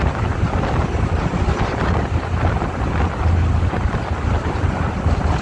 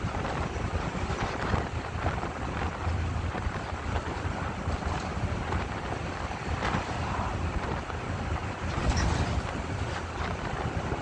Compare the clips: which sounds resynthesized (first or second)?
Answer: second